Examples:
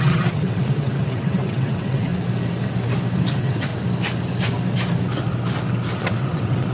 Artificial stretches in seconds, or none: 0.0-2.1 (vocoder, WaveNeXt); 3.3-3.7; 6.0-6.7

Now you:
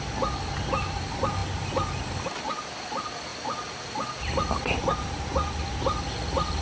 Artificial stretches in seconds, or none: none

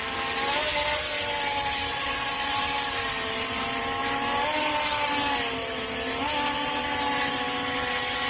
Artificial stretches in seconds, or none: 1.9-2.6 (vocoder, Vocos)

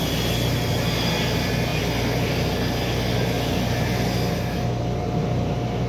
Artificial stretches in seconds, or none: none

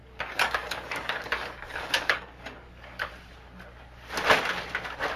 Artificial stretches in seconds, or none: 0.0-3.1 (codec, DAC)

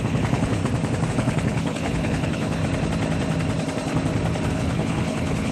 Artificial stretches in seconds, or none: 0.0-0.6 (codec, HILCodec); 1.1-2.6; 4.5-5.5

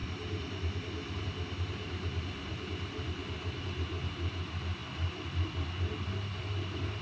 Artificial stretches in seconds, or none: none